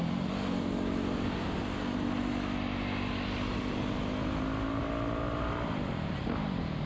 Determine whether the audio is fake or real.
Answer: real